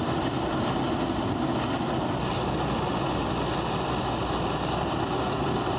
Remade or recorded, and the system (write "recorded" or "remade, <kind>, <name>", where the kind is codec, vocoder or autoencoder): recorded